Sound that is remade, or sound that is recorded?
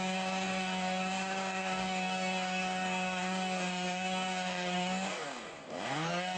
remade